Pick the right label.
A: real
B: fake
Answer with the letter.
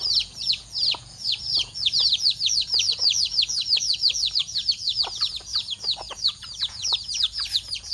B